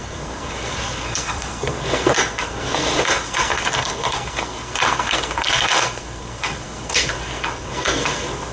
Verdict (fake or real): fake